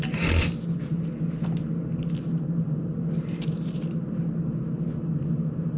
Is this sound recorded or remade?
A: recorded